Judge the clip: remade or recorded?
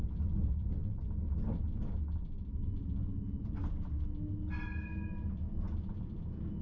recorded